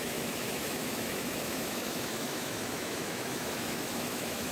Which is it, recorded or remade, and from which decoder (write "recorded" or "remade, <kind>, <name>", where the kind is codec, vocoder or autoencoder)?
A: remade, autoencoder, DAC-VAE